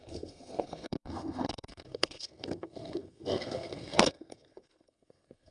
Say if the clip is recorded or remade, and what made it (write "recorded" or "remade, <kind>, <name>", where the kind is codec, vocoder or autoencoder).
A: remade, codec, SNAC